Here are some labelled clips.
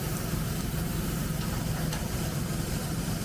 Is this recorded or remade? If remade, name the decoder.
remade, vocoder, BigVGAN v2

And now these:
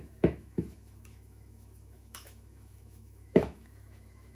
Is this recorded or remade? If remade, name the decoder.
remade, autoencoder, DAC-VAE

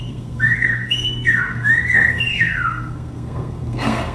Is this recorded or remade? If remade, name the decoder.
remade, codec, SNAC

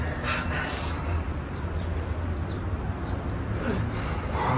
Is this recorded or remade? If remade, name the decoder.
recorded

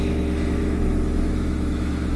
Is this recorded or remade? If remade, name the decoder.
remade, autoencoder, DAC-VAE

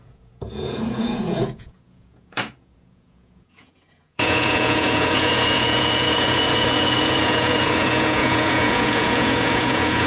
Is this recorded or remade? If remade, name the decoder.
remade, vocoder, Vocos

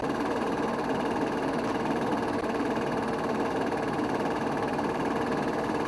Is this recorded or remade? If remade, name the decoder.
remade, vocoder, BigVGAN v2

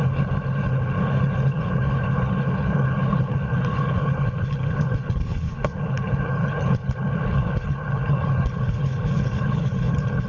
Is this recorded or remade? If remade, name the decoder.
remade, codec, HILCodec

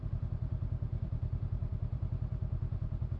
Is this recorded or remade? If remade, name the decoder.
remade, vocoder, BigVGAN v2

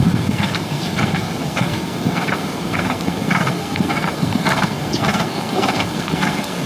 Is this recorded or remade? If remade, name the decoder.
remade, codec, SNAC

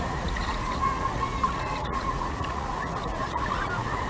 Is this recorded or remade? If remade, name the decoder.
remade, vocoder, Vocos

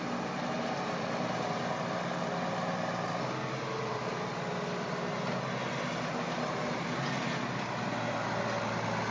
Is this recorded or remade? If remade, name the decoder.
recorded